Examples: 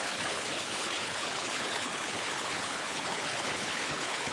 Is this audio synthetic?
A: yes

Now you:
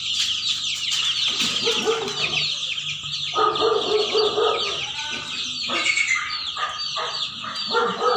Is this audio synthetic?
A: no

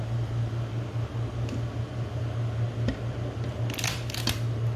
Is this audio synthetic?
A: no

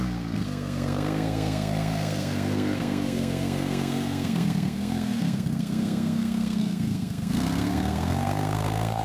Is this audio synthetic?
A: yes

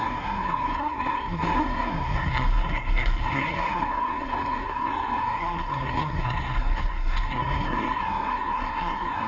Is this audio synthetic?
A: yes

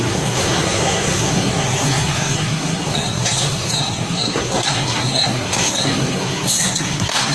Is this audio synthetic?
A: yes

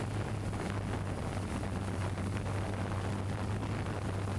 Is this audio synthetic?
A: no